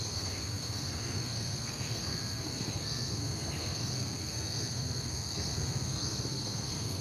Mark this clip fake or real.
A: fake